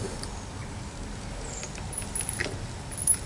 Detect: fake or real real